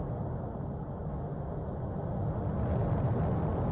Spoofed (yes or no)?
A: no